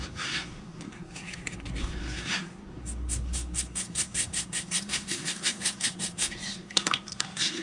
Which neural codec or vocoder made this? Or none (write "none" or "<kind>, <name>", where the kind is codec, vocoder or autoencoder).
codec, SNAC